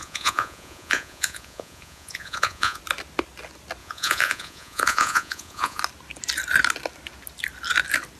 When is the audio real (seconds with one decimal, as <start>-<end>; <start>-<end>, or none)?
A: 2.8-3.8; 5.8-8.2